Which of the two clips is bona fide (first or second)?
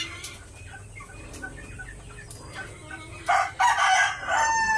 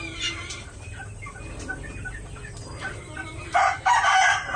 first